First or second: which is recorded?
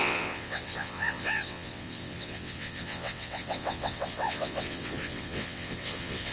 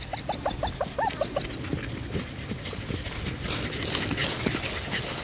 second